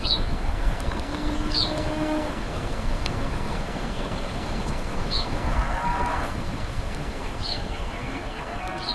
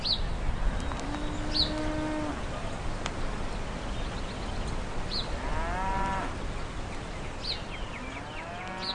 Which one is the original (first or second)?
second